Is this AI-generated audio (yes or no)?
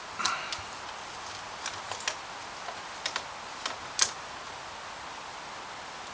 no